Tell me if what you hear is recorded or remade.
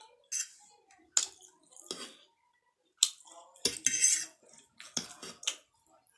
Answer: recorded